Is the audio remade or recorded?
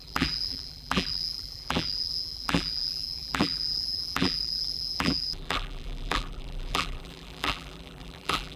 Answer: remade